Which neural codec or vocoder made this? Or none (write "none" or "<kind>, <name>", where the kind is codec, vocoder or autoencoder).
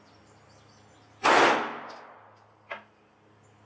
none